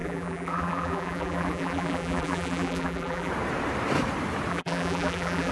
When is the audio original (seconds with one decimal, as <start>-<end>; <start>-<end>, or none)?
3.3-4.5